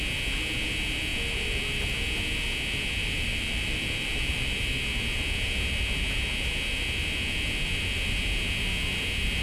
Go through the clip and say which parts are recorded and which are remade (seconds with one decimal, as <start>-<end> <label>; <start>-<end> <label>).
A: 0.0-3.0 recorded; 3.0-4.6 remade; 4.6-9.4 recorded